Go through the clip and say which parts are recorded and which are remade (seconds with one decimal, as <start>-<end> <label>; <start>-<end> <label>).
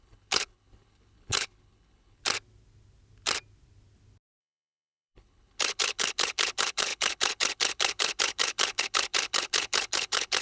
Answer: 0.0-2.2 remade; 2.2-4.4 recorded; 4.4-10.4 remade